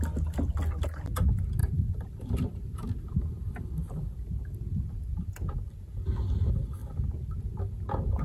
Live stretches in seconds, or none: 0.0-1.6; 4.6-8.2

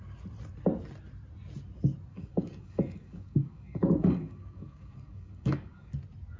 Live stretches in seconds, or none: 0.0-2.1; 5.9-6.4

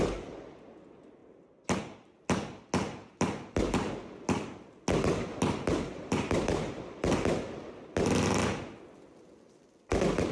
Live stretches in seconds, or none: 0.0-10.3

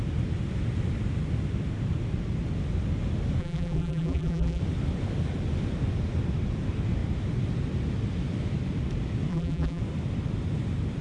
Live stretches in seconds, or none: 0.0-3.4; 4.6-9.3; 9.8-11.0

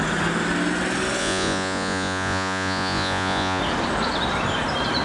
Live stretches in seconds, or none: 0.0-1.2; 3.6-5.0